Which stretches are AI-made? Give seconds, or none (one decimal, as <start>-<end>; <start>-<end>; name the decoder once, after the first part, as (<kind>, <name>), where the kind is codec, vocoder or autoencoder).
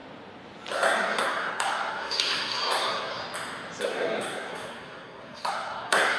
0.7-3.2 (codec, SNAC); 3.8-6.2